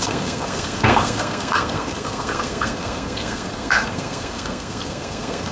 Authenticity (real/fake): fake